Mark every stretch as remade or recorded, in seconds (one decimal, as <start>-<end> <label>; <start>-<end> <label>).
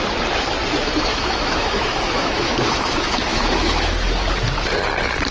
0.0-1.1 recorded; 1.1-4.3 remade; 4.3-5.3 recorded